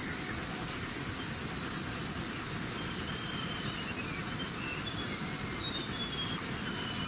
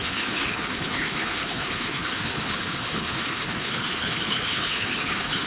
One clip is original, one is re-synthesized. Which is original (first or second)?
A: first